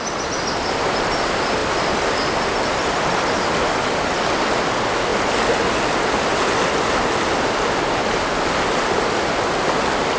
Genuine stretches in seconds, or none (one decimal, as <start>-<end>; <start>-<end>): 0.0-10.2